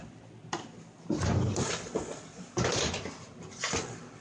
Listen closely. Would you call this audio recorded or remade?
recorded